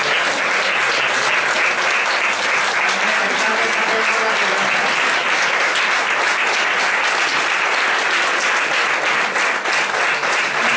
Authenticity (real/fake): real